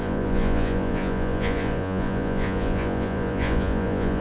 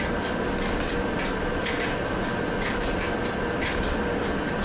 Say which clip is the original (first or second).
second